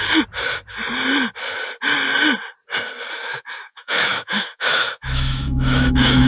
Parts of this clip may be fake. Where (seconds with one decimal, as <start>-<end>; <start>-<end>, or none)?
3.3-6.3